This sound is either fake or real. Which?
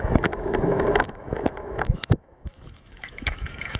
fake